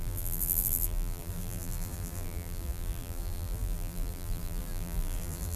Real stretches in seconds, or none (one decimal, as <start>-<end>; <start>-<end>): none